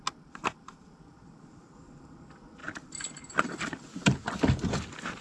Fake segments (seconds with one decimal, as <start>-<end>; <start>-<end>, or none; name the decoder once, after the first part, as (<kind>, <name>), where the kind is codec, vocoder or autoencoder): none